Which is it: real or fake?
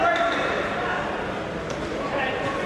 real